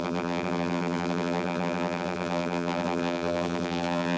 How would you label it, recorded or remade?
remade